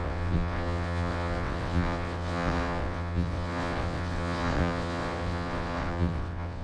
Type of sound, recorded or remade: remade